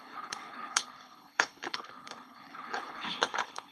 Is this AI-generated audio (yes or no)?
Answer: yes